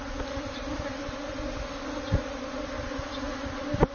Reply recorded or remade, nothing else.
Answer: recorded